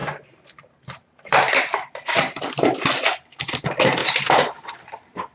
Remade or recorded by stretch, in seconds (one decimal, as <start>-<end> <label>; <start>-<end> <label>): 0.0-2.5 remade; 2.5-4.0 recorded; 4.0-4.6 remade; 4.6-5.3 recorded